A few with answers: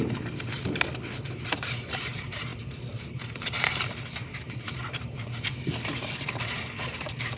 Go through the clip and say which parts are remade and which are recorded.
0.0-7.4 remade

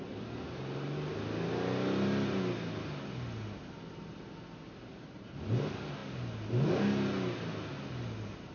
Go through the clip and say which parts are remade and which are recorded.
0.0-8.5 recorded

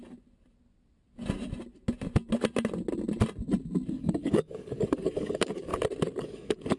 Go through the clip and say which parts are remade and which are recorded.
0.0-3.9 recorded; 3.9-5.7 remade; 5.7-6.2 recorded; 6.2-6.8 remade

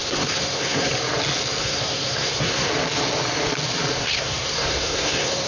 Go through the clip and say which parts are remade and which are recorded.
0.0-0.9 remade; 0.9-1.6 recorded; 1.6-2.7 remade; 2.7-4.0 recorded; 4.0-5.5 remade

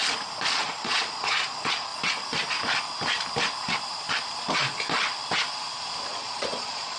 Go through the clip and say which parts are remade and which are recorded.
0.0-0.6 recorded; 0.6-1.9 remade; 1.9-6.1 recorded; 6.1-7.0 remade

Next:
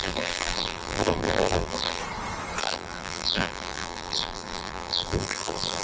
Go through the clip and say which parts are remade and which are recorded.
0.0-2.0 remade; 2.0-2.6 recorded; 2.6-5.8 remade